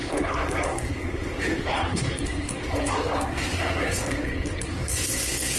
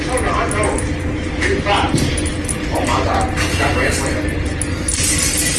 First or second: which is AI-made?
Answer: first